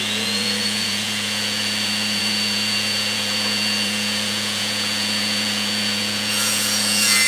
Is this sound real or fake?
fake